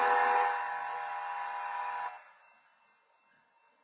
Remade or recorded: recorded